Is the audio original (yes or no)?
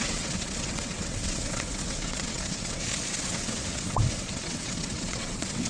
no